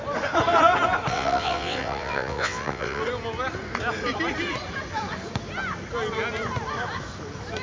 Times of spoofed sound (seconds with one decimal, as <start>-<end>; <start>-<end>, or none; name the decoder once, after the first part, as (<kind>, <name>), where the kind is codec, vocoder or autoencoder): 1.1-3.0 (vocoder, WaveNeXt)